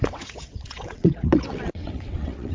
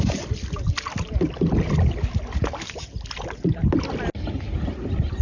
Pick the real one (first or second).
second